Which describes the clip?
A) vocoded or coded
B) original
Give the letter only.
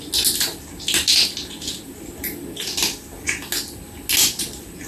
B